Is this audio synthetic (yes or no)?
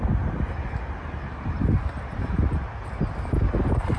no